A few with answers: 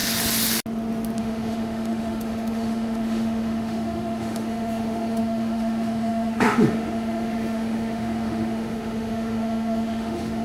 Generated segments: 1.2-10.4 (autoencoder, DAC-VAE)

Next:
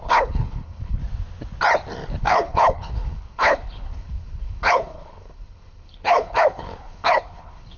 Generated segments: 0.0-1.0 (codec, HILCodec); 2.2-7.8

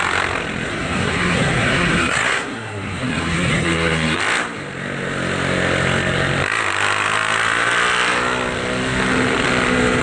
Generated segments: 0.7-4.2 (codec, SNAC)